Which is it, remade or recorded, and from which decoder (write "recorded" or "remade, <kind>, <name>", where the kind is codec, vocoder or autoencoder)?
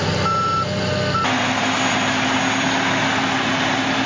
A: recorded